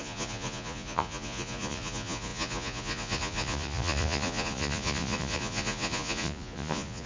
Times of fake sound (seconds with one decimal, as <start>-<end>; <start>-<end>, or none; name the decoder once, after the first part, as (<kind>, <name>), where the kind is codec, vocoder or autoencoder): 0.0-7.1 (vocoder, Vocos)